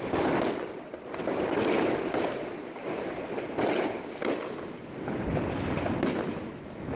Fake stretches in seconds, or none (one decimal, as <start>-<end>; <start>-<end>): 6.3-7.0